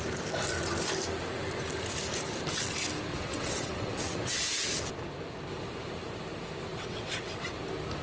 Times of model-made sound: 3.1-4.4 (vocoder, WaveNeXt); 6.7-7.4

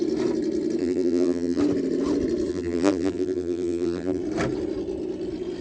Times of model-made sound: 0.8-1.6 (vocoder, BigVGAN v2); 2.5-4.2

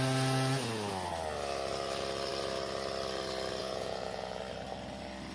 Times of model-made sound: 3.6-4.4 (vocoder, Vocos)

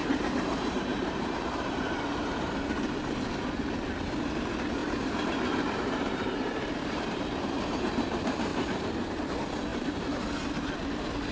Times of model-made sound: 0.0-2.5 (vocoder, BigVGAN v2); 4.8-7.4; 8.5-9.1; 9.7-10.3

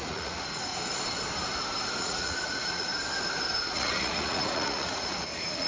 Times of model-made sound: 0.0-0.7 (vocoder, Vocos); 2.0-2.9; 3.6-5.7